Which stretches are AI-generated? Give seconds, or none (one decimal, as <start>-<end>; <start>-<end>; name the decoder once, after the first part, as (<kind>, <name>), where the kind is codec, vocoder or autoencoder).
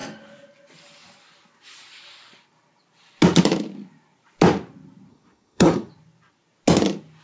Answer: 5.1-5.9 (codec, SNAC)